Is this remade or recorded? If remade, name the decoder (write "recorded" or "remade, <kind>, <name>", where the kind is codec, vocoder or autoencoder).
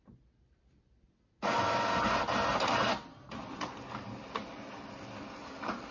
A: recorded